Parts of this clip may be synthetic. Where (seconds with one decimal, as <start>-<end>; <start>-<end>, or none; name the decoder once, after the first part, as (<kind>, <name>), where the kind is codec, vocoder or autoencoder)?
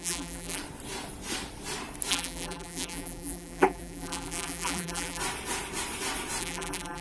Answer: 0.0-0.6 (vocoder, BigVGAN v2); 2.1-5.2; 6.4-7.0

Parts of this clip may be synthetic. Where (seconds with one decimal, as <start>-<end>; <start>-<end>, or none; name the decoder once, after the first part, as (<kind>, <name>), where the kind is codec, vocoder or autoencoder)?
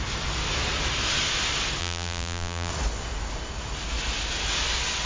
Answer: 1.8-2.7 (vocoder, BigVGAN v2)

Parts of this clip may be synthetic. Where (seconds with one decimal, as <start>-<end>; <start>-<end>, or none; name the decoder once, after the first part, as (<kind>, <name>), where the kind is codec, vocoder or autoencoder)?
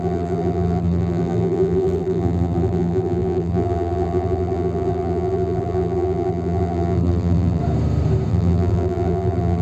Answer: 0.0-7.6 (vocoder, BigVGAN v2); 8.3-9.6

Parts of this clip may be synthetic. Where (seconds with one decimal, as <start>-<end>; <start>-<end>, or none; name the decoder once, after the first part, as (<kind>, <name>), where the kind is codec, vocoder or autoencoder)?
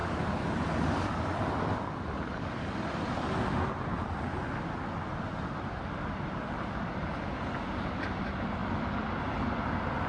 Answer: none